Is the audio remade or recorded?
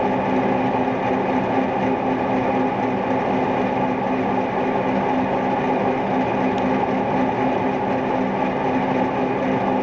recorded